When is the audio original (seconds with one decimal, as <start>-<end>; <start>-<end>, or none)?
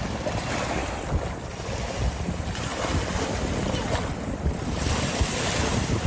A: 0.0-6.1